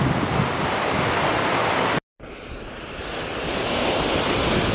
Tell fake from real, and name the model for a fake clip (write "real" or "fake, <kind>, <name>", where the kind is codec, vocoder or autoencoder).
real